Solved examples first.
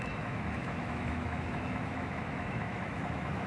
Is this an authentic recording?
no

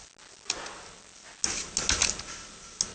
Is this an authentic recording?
yes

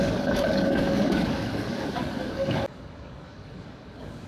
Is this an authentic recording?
no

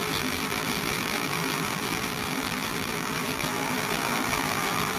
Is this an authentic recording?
no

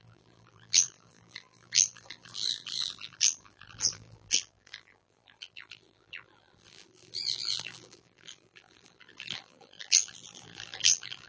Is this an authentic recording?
no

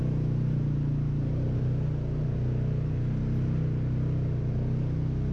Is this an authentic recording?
yes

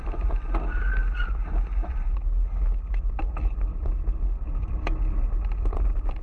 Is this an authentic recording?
yes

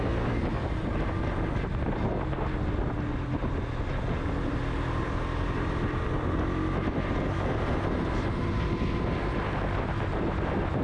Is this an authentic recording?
yes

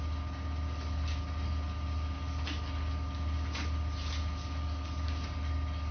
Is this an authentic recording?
yes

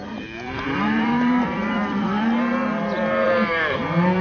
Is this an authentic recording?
no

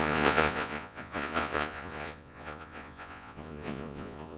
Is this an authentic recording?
no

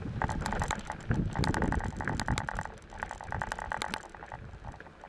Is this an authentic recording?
yes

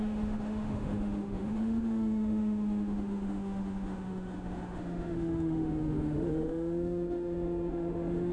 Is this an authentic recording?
no